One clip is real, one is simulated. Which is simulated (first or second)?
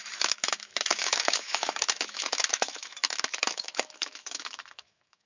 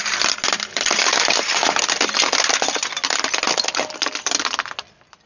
first